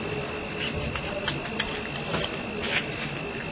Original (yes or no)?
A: yes